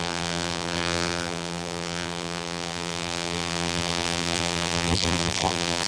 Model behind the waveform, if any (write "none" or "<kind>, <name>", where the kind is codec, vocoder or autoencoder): vocoder, BigVGAN v2